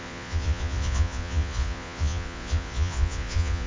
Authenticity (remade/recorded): remade